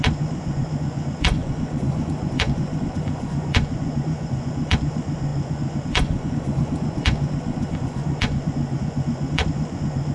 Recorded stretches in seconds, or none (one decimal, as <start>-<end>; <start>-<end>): none